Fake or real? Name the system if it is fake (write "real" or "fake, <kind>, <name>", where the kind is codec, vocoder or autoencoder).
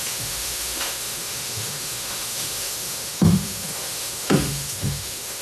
fake, autoencoder, DAC-VAE